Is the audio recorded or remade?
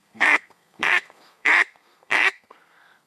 remade